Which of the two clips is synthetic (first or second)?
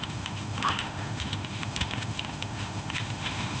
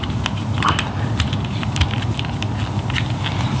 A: first